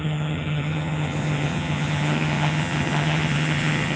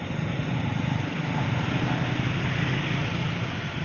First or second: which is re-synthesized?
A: first